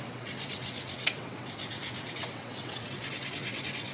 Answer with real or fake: fake